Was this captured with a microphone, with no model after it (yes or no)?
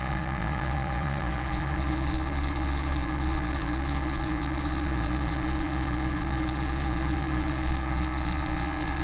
no